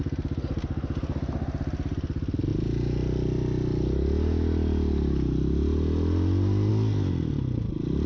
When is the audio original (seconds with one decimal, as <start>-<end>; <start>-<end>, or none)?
0.0-8.1